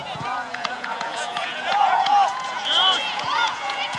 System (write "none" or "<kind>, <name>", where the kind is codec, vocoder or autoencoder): vocoder, Vocos